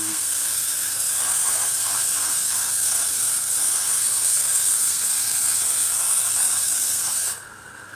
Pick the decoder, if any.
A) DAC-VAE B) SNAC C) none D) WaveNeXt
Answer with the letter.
B